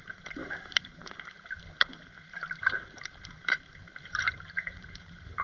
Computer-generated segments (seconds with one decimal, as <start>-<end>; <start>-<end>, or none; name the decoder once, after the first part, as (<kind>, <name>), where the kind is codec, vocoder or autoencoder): 0.0-5.4 (vocoder, BigVGAN v2)